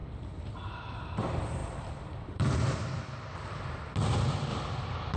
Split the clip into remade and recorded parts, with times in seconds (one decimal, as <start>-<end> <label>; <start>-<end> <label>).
0.0-1.6 recorded; 1.6-3.8 remade; 3.8-4.5 recorded; 4.5-5.2 remade